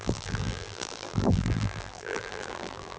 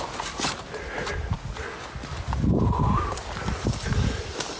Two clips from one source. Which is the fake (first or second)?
first